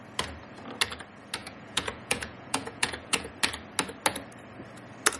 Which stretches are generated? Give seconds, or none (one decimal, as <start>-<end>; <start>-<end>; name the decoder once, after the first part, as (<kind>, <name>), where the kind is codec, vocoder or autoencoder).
1.4-3.3 (vocoder, Vocos)